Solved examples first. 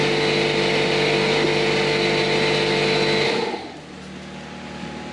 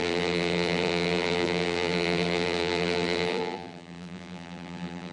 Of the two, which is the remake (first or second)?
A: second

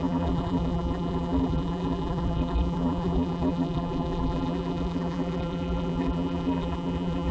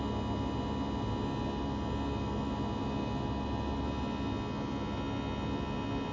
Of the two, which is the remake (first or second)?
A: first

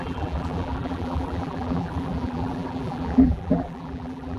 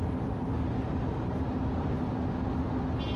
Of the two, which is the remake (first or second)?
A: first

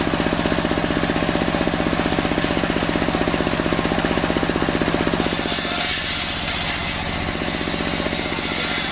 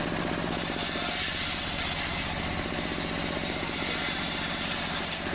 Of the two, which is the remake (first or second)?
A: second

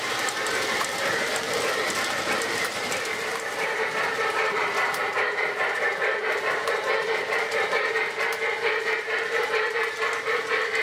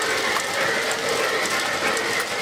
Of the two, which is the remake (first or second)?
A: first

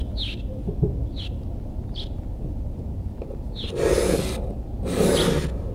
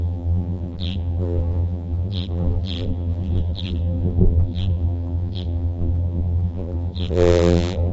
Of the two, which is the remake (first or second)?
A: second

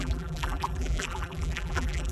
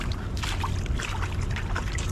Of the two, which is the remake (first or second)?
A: first